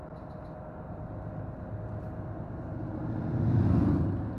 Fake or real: real